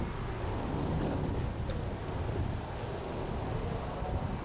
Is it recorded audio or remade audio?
recorded